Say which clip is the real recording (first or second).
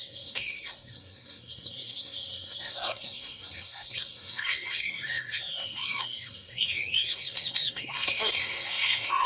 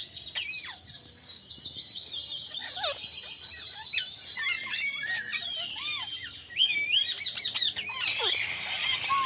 second